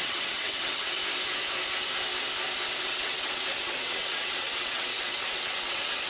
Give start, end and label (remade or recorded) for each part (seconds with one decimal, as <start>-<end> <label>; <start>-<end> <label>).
0.0-1.0 remade; 1.0-2.8 recorded; 2.8-6.1 remade